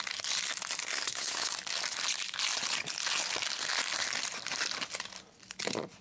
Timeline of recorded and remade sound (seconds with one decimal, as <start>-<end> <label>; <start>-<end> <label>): 0.0-0.8 recorded; 0.8-1.5 remade; 1.5-6.0 recorded